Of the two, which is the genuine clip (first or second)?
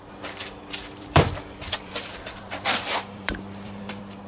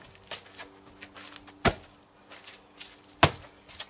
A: second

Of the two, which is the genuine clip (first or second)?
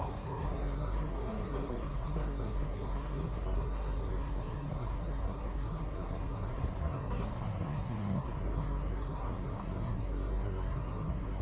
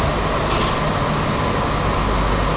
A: second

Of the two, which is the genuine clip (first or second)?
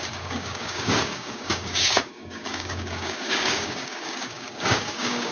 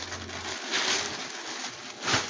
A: second